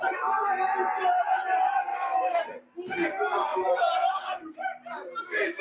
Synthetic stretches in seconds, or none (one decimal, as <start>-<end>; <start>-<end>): 1.9-2.4

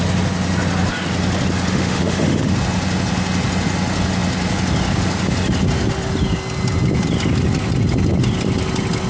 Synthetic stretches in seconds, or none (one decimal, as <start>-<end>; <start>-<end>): 1.7-2.5

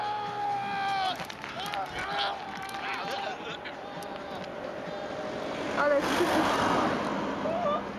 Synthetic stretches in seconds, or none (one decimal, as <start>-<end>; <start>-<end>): none

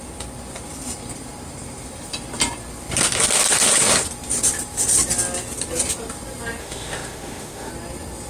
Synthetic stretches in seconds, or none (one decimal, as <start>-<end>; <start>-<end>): 6.6-7.7